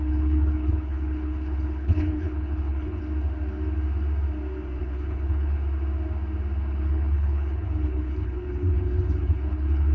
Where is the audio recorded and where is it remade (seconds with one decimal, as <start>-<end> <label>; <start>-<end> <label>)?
0.0-3.0 remade; 3.0-4.8 recorded; 4.8-5.6 remade; 5.6-6.6 recorded; 6.6-9.9 remade

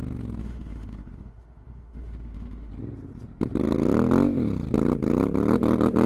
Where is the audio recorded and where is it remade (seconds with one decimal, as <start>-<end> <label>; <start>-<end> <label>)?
0.0-0.4 recorded; 0.4-2.7 remade; 2.7-6.1 recorded